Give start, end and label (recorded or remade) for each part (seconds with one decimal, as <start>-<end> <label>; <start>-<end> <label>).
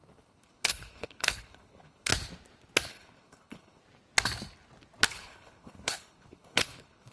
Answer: 0.0-2.1 remade; 2.1-2.9 recorded; 2.9-3.8 remade; 3.8-5.1 recorded; 5.1-7.1 remade